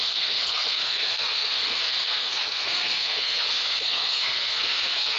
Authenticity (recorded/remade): remade